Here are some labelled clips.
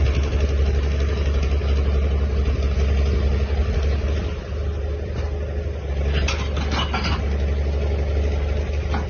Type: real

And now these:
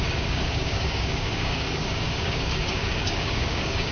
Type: fake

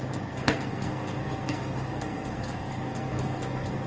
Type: fake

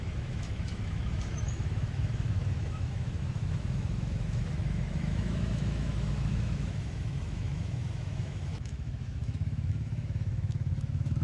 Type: fake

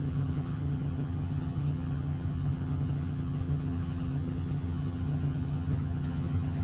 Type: fake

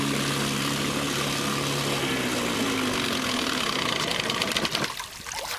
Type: real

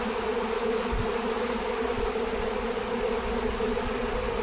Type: real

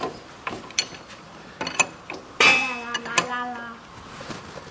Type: real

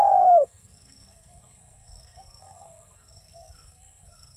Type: fake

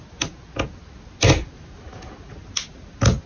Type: real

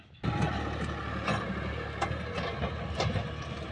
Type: real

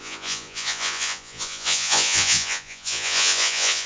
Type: fake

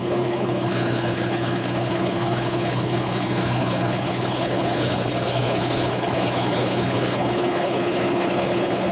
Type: fake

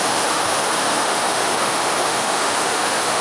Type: fake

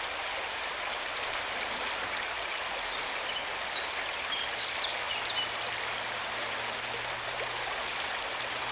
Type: real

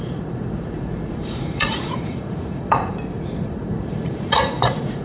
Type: fake